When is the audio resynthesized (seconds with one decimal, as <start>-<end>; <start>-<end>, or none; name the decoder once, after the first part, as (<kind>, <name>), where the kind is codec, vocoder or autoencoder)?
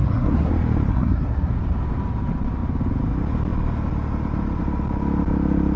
0.0-0.5 (codec, SNAC); 0.9-1.5